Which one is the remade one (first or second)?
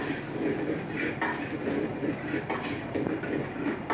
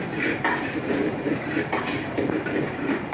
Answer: second